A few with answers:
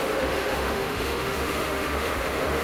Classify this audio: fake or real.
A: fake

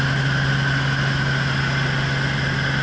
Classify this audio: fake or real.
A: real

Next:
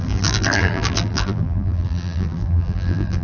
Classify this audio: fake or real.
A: fake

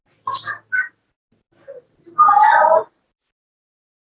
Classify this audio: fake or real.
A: real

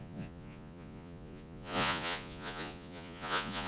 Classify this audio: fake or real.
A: fake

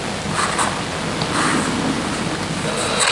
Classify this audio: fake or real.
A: real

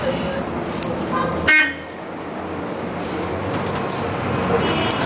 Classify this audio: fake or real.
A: real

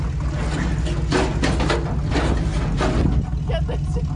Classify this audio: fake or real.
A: real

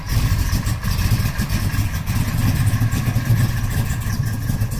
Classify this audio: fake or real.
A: fake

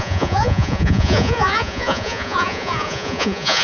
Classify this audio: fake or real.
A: fake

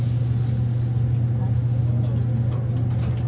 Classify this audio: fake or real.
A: real